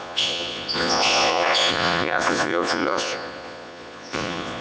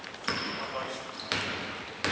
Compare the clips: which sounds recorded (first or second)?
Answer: second